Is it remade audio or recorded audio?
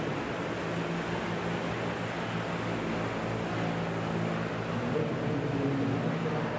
recorded